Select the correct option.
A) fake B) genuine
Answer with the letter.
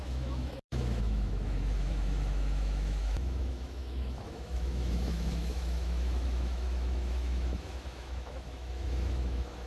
A